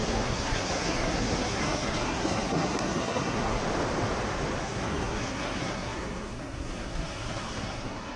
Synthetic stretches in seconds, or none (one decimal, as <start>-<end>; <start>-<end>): 0.0-3.6; 4.6-8.2